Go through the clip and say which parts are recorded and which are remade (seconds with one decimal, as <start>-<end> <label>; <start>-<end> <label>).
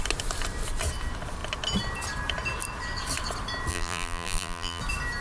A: 0.0-3.7 recorded; 3.7-4.8 remade; 4.8-5.2 recorded